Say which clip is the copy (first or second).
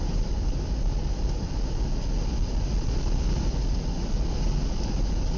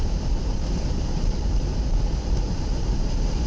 second